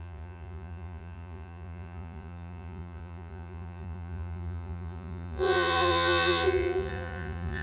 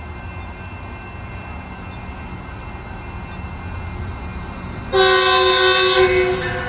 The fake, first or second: first